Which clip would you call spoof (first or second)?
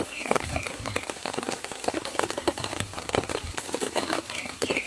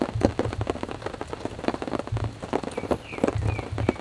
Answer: first